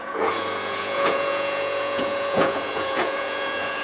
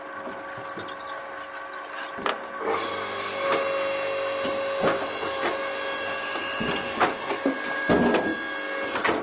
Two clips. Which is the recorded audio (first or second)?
second